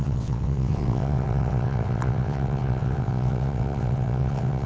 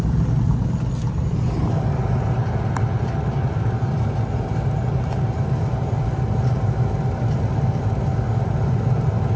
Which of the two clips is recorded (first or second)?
second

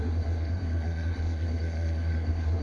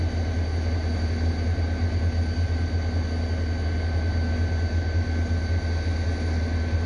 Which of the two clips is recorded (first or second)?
second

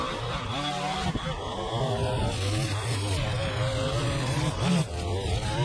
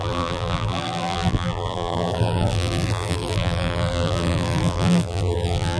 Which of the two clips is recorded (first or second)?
first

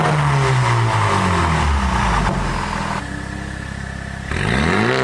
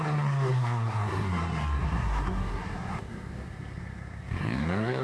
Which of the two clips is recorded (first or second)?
first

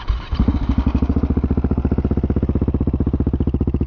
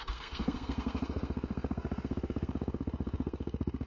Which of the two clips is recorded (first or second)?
first